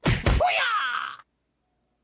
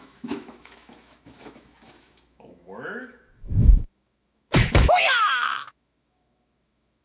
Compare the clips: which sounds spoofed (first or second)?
second